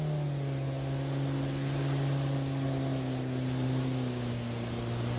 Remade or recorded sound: recorded